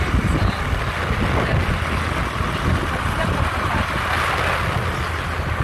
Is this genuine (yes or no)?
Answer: yes